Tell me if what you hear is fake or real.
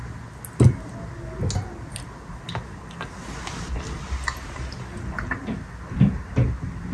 real